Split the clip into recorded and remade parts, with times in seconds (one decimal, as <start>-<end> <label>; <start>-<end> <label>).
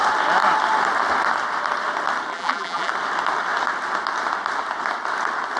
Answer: 0.0-2.3 recorded; 2.3-2.9 remade; 2.9-5.6 recorded